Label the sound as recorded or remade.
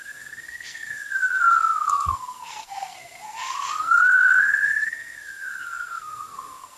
remade